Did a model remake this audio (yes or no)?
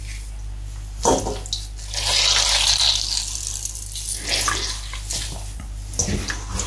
no